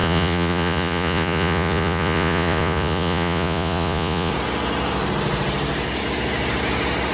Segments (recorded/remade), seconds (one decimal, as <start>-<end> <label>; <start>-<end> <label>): 0.0-4.3 remade; 4.3-7.1 recorded